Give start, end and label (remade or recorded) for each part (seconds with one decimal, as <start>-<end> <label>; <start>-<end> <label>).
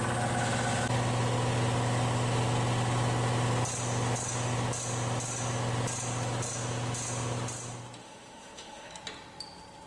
0.0-8.0 recorded; 8.0-8.9 remade; 8.9-9.9 recorded